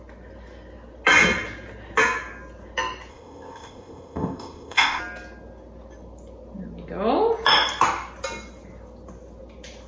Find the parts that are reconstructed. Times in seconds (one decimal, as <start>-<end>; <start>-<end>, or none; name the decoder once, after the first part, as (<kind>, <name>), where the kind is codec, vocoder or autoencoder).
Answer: 3.1-5.0 (codec, ZipCodec)